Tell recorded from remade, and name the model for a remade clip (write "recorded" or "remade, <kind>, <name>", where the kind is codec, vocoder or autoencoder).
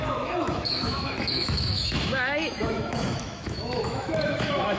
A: remade, autoencoder, DAC-VAE